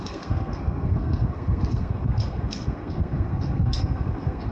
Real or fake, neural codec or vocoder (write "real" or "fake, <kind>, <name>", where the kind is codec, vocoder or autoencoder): fake, codec, SNAC